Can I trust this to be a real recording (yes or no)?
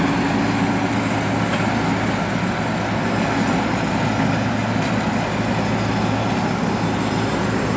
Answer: yes